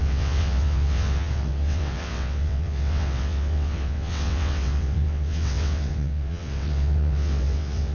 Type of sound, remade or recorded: remade